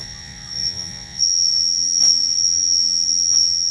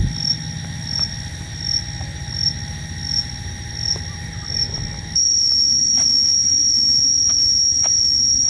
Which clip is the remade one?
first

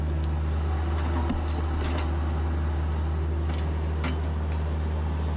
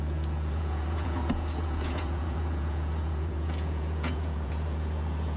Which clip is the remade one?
second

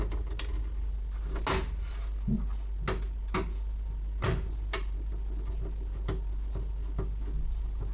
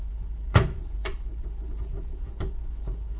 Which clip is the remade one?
second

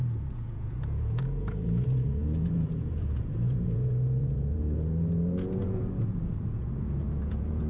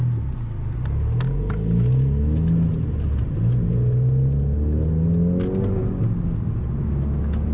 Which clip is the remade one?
first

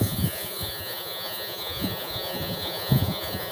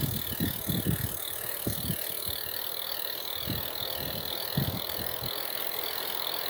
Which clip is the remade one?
first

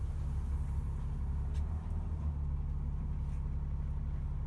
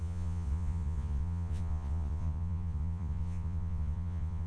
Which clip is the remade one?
second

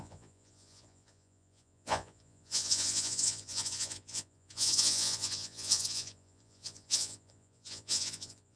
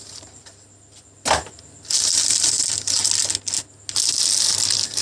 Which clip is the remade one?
first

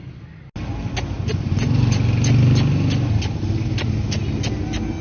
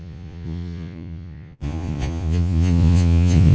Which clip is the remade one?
second